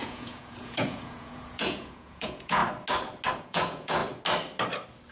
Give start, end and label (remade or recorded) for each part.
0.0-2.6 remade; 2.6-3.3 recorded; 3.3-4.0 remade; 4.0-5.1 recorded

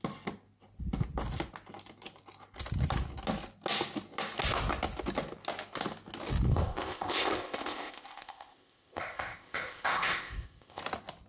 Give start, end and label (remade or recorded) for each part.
0.0-6.5 recorded; 6.5-10.8 remade; 10.8-11.3 recorded

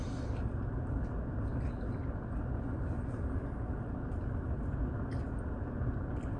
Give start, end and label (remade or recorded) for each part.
0.0-6.4 recorded

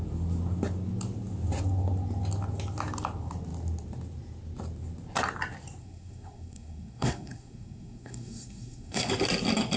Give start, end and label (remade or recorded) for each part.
0.0-5.8 recorded; 5.8-9.1 remade; 9.1-9.8 recorded